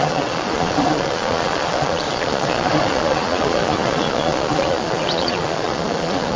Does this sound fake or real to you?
fake